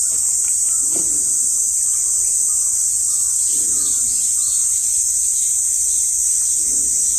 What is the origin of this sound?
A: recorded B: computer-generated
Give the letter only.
A